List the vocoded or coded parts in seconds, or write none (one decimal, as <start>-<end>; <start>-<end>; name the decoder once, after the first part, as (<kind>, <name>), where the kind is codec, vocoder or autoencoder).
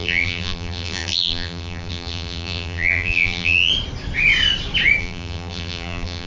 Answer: 0.0-3.7 (vocoder, BigVGAN v2); 5.0-6.3